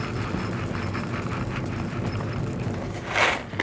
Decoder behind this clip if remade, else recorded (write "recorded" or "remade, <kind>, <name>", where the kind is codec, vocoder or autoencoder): recorded